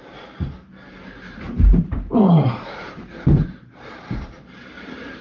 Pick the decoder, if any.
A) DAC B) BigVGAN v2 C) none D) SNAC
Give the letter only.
B